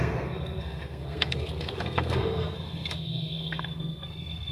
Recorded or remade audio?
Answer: remade